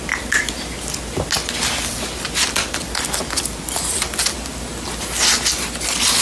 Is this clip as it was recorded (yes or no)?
yes